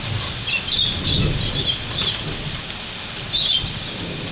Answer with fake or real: real